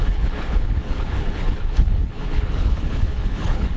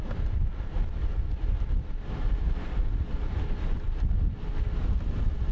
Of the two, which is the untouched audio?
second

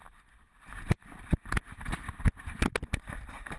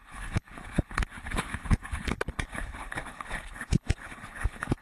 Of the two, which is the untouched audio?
first